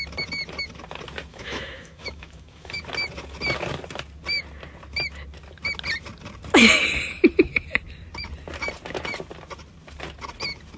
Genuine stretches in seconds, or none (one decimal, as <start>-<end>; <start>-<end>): 0.0-1.3; 2.8-10.8